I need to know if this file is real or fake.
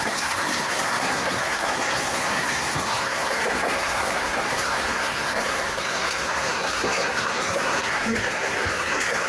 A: fake